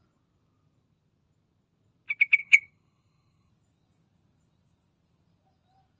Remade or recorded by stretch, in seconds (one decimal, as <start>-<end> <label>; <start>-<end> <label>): 0.0-2.4 recorded; 2.4-3.5 remade; 3.5-6.0 recorded